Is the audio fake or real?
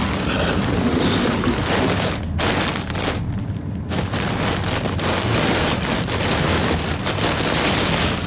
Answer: real